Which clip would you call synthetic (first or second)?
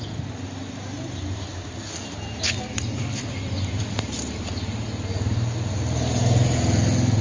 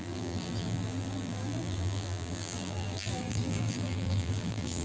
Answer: second